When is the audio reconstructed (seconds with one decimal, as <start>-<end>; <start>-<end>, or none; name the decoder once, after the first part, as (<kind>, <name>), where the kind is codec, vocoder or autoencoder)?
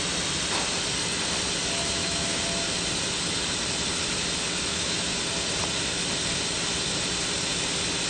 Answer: 1.8-2.4 (autoencoder, DAC-VAE); 4.7-5.2